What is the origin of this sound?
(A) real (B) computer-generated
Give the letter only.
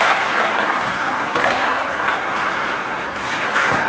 B